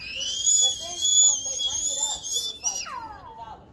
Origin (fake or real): real